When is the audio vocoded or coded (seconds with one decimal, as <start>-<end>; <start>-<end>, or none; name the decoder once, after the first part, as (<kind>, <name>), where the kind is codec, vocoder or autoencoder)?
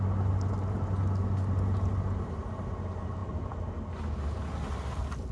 none